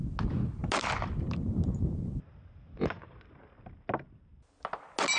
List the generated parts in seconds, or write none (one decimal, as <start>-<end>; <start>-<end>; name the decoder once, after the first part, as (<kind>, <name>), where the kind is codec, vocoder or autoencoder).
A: none